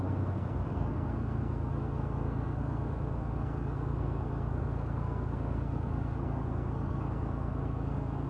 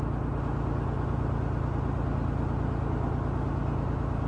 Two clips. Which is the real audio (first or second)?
second